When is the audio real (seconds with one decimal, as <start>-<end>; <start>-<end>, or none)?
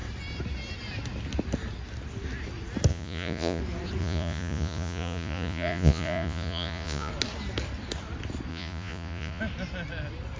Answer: 0.0-2.9; 3.6-4.0; 7.1-8.5; 9.4-10.4